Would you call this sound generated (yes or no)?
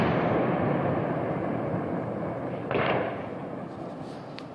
no